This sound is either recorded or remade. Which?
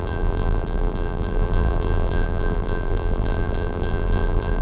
remade